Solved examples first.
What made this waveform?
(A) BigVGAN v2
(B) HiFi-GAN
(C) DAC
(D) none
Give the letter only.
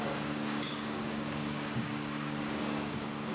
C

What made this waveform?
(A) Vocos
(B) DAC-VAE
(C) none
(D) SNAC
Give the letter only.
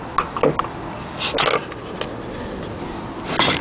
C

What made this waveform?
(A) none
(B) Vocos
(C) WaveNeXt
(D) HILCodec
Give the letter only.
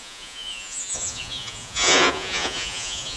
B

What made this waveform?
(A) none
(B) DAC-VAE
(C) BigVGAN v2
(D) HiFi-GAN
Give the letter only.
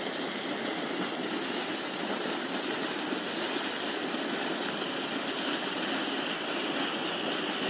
A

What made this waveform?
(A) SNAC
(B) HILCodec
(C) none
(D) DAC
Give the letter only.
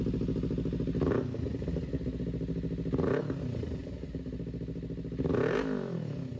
C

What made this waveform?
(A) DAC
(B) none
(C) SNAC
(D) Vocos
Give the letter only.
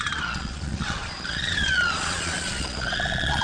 D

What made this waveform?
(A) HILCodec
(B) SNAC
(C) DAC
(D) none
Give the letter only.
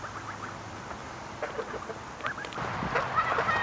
D